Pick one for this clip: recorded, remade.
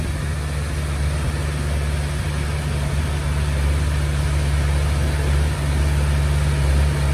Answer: recorded